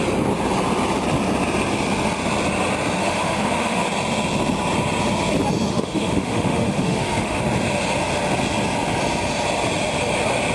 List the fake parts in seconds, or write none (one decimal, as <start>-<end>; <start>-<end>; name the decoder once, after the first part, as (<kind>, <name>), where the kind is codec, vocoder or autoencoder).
3.0-3.9 (autoencoder, DAC-VAE); 5.7-7.4